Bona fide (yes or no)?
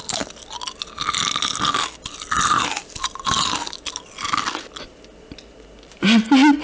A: yes